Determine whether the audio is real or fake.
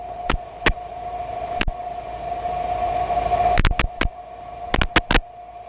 real